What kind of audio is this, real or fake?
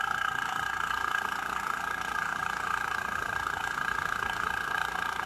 fake